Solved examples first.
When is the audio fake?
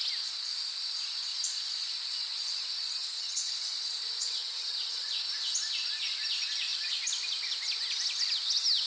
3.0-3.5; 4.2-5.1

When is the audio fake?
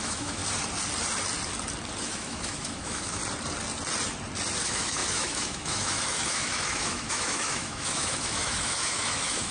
0.0-0.4; 2.0-3.2; 4.6-9.5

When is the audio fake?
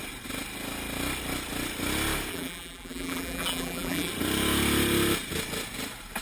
2.3-4.1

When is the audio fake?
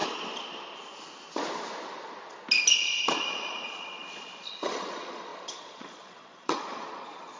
3.3-7.4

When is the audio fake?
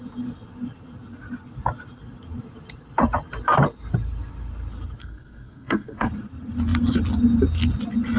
5.0-6.1